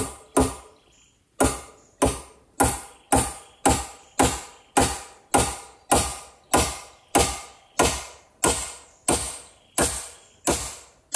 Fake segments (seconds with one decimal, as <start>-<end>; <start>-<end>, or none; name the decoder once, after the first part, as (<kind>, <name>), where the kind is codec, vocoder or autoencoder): none

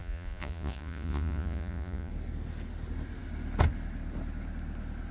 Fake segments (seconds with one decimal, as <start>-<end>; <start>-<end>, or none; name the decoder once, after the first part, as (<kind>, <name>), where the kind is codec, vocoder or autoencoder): 0.0-2.1 (vocoder, Vocos)

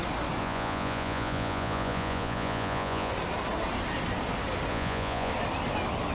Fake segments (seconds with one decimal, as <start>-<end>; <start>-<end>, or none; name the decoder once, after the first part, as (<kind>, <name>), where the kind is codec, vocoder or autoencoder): 0.4-3.1 (vocoder, Vocos); 4.7-5.3

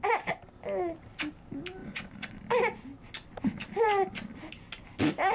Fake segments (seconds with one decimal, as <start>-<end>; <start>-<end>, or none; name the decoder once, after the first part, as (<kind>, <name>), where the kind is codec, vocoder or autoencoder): 1.8-2.3 (vocoder, Vocos)

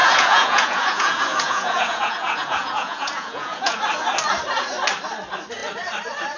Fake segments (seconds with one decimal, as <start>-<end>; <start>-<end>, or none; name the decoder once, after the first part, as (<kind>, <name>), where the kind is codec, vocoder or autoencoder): 0.0-3.8 (vocoder, Vocos)

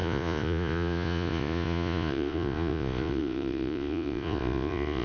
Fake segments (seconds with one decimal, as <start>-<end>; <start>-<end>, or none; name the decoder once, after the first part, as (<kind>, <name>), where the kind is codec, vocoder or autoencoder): 0.0-5.0 (vocoder, Vocos)

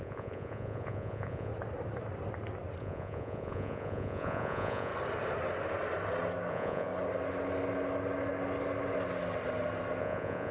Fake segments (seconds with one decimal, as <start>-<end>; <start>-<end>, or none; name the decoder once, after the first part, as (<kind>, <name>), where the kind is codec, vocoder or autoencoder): 0.0-1.5 (vocoder, Vocos); 2.8-4.9; 6.5-6.9; 10.0-10.5